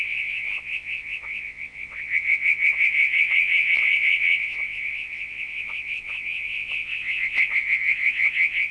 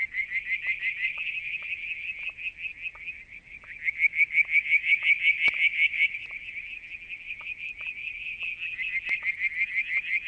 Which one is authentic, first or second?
second